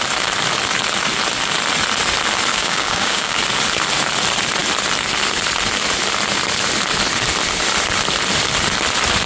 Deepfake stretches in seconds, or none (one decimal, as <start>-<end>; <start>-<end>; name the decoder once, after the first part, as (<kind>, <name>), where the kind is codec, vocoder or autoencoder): 2.5-3.4 (codec, DAC)